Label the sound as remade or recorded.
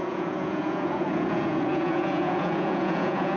remade